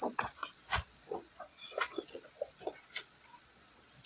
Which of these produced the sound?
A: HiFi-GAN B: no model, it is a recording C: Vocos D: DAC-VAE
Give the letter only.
C